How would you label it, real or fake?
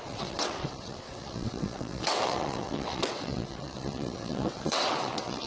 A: fake